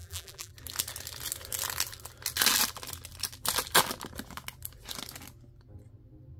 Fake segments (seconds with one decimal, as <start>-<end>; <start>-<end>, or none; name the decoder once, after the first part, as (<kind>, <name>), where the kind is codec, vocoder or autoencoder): 0.0-0.5 (vocoder, BigVGAN v2)